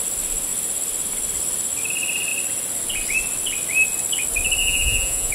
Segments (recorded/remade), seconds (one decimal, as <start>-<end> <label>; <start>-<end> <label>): 0.0-4.6 recorded; 4.6-5.3 remade